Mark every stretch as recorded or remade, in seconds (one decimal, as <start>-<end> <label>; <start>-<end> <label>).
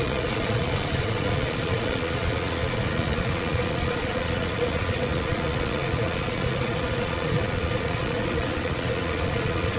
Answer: 0.0-9.8 remade